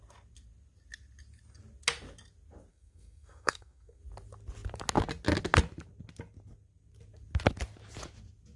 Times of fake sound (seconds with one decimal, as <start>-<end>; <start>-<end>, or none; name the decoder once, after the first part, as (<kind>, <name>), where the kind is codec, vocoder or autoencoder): 2.7-4.0 (codec, SNAC)